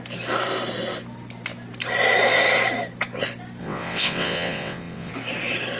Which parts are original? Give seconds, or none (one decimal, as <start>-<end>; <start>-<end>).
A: 0.0-3.6; 5.1-5.8